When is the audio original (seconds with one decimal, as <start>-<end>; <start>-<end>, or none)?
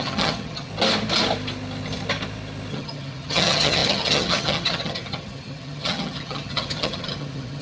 0.7-2.7